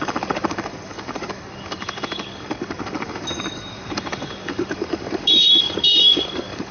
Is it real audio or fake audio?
fake